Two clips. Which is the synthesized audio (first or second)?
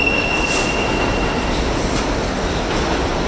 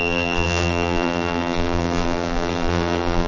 second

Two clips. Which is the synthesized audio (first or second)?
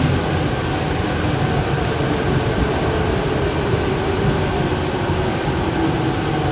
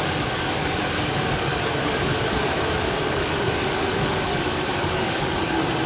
second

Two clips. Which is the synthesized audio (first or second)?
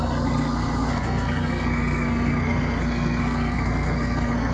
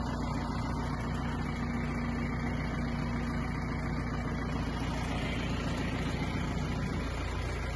first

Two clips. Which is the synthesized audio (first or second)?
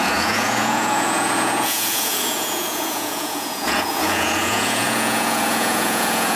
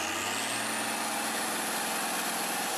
first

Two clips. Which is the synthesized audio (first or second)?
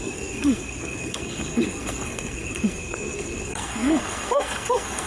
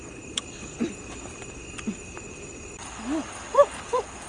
first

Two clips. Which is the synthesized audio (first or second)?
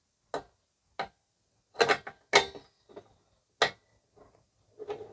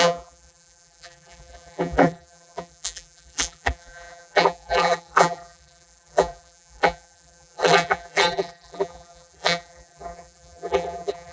second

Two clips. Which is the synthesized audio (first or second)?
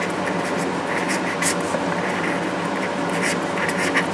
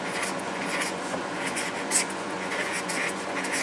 second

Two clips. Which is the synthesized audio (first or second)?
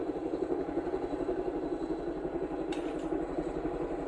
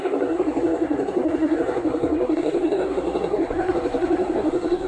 second